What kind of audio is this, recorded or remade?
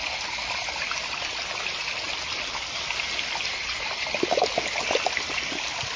recorded